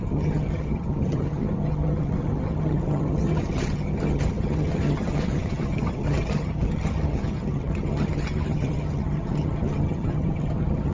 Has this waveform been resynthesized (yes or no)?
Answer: yes